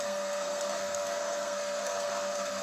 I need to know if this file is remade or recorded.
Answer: remade